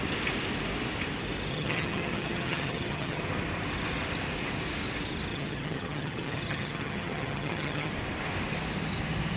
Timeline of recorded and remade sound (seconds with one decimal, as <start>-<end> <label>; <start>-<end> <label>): 0.0-1.5 recorded; 1.5-3.2 remade; 3.2-5.3 recorded; 5.3-7.9 remade; 7.9-9.4 recorded